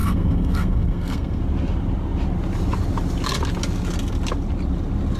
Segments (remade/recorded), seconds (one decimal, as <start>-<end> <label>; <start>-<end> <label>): 0.0-1.4 remade; 1.4-5.2 recorded